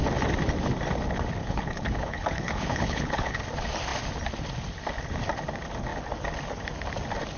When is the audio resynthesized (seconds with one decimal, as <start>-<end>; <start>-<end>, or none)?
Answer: 1.4-3.4